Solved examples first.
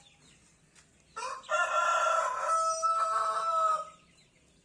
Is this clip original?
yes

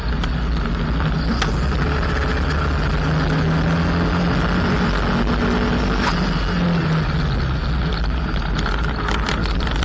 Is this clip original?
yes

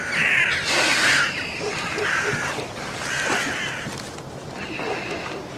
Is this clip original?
yes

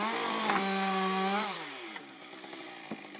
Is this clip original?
no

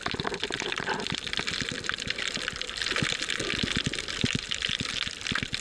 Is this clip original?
no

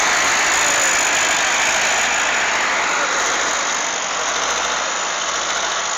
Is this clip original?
yes